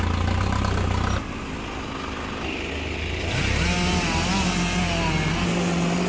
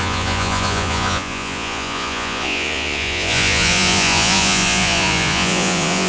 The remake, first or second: second